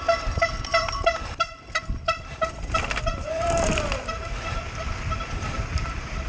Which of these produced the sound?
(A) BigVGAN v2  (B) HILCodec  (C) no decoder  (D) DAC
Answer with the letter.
A